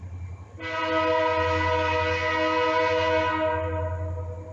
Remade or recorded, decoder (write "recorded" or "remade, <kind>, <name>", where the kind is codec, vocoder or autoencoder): recorded